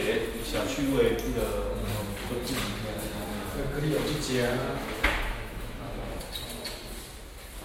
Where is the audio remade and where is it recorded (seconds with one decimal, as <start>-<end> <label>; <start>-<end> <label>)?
0.0-4.6 recorded; 4.6-6.2 remade; 6.2-7.6 recorded